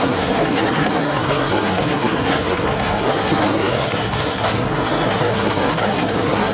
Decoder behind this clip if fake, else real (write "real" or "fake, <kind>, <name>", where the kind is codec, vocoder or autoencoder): fake, codec, SNAC